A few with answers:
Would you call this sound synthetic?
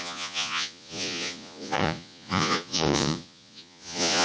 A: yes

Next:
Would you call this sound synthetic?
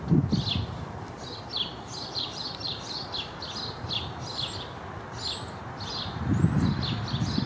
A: no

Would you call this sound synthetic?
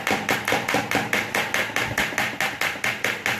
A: no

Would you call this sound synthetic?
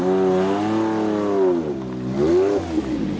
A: no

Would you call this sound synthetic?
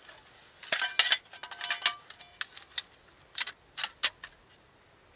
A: no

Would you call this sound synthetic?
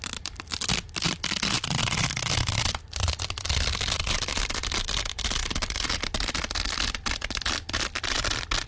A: no